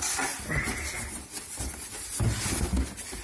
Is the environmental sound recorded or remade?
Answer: recorded